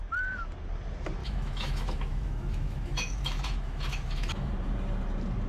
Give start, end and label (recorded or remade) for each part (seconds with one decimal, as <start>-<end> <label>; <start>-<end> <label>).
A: 0.0-1.2 recorded; 1.2-4.5 remade; 4.5-5.5 recorded